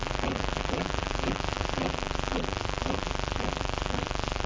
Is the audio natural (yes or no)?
no